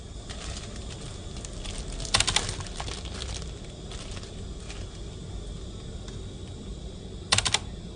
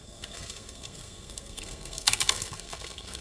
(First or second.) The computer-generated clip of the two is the second